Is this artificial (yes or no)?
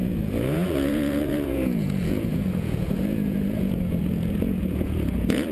yes